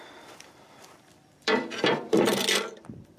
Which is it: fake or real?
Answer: fake